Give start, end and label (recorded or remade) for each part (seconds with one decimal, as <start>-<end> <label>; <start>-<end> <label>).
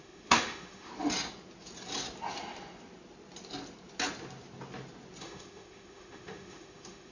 0.0-0.9 remade; 0.9-5.2 recorded; 5.2-7.1 remade